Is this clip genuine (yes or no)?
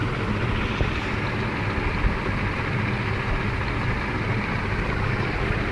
yes